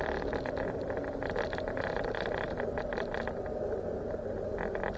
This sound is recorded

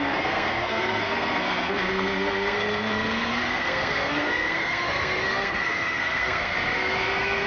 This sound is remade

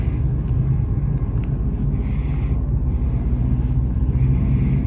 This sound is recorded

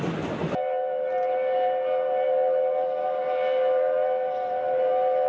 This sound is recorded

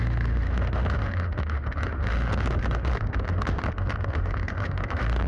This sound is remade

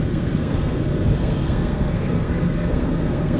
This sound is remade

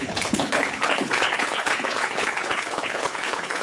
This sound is remade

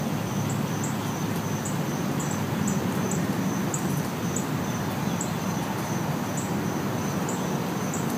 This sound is recorded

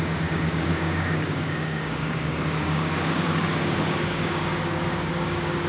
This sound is remade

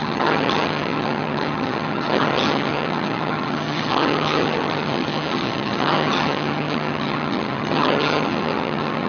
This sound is remade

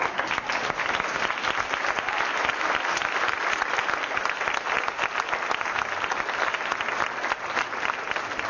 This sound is recorded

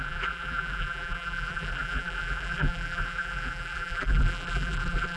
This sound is remade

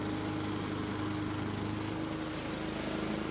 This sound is recorded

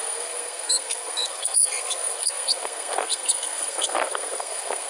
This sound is remade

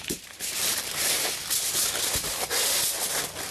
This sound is recorded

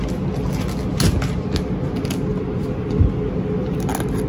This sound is recorded